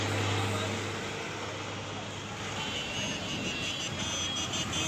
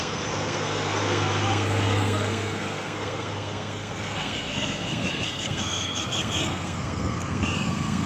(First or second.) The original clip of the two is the first